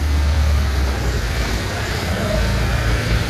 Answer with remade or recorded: remade